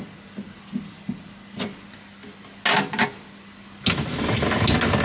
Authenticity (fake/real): real